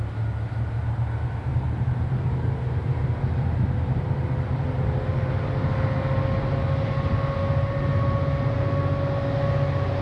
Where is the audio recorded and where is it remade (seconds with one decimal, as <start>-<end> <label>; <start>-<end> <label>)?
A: 0.0-1.5 recorded; 1.5-3.1 remade; 3.1-10.0 recorded